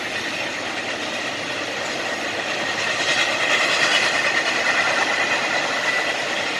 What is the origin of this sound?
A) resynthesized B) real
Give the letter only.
B